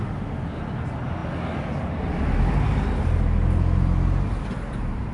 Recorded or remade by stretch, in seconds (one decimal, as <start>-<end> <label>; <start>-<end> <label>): 0.0-5.1 recorded